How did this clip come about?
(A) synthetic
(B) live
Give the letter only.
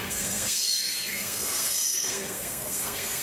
A